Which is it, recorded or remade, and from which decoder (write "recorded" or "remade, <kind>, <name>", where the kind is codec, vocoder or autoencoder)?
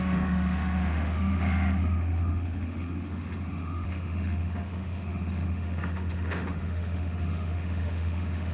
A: remade, autoencoder, DAC-VAE